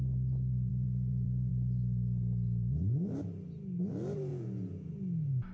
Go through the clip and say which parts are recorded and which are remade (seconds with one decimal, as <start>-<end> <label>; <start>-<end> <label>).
0.0-0.7 recorded; 0.7-1.5 remade; 1.5-4.3 recorded; 4.3-4.9 remade; 4.9-5.5 recorded